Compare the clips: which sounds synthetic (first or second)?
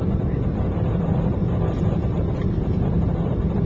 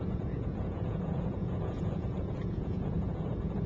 second